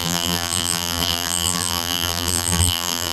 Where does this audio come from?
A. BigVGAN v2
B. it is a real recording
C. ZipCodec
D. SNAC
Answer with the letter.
A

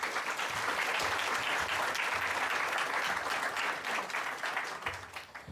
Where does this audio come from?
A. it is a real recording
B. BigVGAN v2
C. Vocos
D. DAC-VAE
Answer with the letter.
A